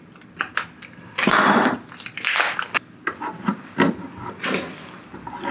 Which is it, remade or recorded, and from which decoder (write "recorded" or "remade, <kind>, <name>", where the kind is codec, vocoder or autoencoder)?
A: recorded